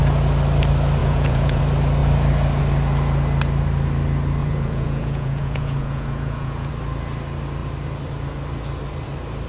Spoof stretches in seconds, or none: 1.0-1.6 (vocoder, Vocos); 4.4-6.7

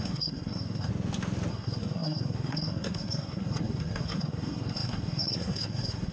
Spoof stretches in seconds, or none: 0.0-0.9 (codec, SNAC); 1.5-6.1

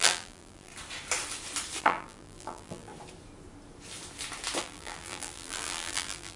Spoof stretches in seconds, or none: 0.0-0.7 (vocoder, BigVGAN v2); 1.8-2.9; 4.6-6.4

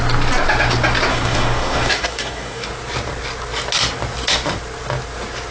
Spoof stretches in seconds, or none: 1.1-2.7 (codec, DAC)

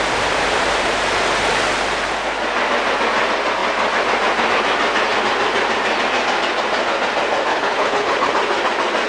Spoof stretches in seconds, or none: 7.5-8.3 (codec, HILCodec)